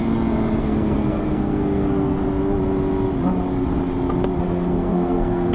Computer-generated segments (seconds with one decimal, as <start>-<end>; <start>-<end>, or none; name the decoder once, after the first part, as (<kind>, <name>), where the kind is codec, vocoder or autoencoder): 0.6-2.2 (codec, SNAC); 4.4-5.5